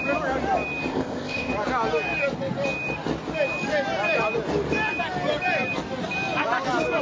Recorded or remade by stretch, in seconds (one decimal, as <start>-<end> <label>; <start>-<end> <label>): 0.0-0.9 recorded; 0.9-1.5 remade; 1.5-7.0 recorded